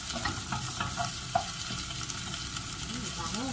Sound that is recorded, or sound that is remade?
recorded